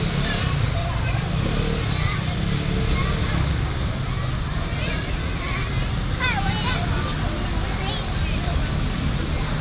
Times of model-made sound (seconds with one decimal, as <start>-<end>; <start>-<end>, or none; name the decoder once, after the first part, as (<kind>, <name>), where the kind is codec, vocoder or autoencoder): none